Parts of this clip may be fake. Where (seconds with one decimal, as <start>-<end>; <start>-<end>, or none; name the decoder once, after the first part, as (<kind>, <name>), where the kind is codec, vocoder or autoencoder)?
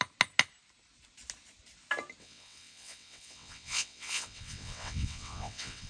2.2-5.9 (vocoder, WaveNeXt)